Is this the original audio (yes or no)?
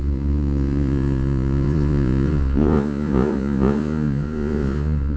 no